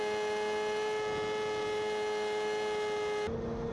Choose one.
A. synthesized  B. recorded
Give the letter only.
B